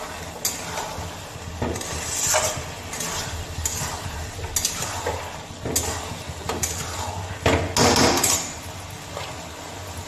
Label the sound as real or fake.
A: real